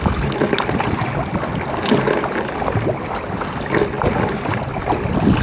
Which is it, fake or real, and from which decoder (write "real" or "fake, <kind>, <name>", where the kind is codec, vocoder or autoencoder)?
real